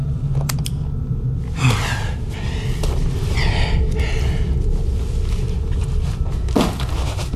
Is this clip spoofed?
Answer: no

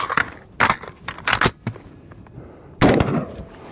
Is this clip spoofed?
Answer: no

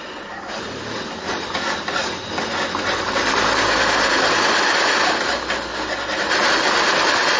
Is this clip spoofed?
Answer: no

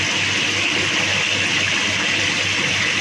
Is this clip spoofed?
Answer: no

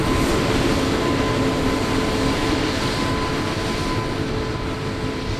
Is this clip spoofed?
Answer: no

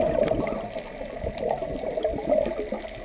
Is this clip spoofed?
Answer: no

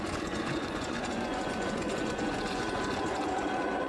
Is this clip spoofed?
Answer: yes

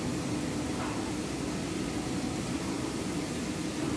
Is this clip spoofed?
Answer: no